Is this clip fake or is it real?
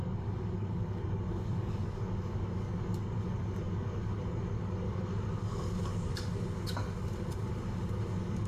fake